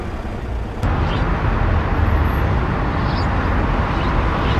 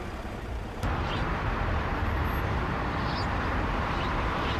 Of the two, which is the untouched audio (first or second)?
first